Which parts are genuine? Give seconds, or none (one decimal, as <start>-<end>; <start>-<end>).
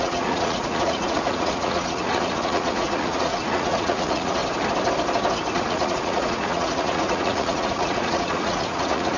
4.4-5.5